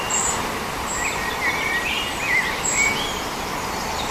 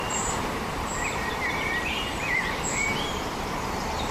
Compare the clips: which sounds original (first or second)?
first